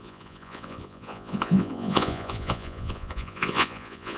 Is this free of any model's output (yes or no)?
no